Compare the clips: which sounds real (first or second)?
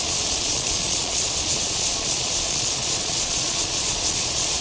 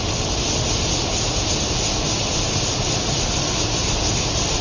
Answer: second